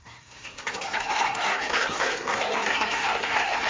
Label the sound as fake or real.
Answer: fake